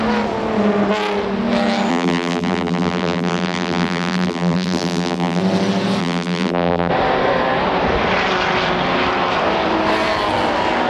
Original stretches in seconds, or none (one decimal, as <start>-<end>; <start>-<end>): 0.0-1.9; 5.4-6.0; 6.9-10.9